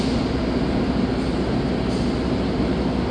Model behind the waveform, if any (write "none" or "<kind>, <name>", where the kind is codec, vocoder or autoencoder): none